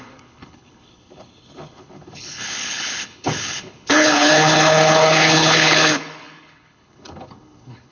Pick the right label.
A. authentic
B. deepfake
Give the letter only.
B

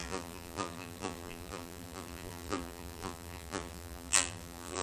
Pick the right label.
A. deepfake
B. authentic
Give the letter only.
A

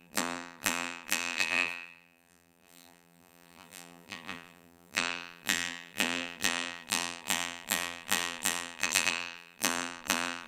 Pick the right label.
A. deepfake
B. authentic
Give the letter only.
A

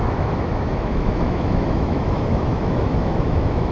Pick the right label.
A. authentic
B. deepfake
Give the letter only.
B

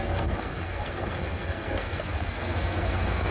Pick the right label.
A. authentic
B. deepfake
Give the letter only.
B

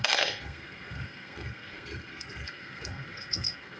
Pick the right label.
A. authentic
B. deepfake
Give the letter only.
B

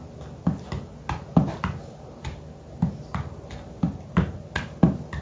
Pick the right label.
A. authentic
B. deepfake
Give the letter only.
A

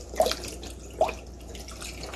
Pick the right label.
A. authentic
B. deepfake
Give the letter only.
A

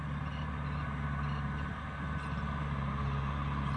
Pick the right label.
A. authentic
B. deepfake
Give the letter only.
B